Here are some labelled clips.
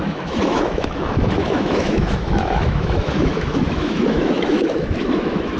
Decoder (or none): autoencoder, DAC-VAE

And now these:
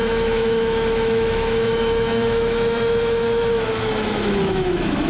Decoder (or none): autoencoder, DAC-VAE